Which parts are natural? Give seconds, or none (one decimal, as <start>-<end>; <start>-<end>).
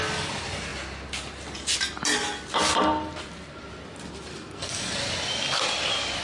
0.0-4.3; 4.9-6.2